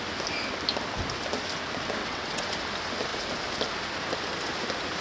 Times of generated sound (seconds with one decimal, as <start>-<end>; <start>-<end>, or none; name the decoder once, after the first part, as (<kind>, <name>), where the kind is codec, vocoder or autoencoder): 2.0-2.5 (vocoder, WaveNeXt)